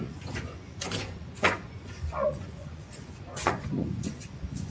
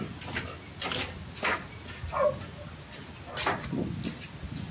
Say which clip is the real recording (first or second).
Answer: second